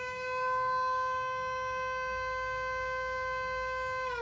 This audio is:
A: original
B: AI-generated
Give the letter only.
B